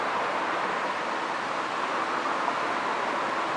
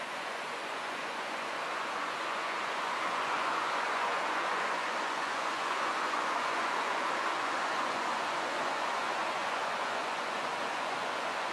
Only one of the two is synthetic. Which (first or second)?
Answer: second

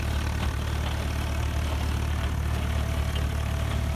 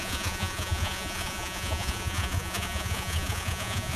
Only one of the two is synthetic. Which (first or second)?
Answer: second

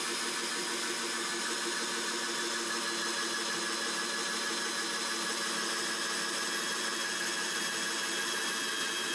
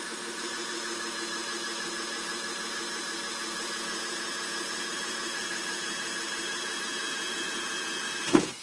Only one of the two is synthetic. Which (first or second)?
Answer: second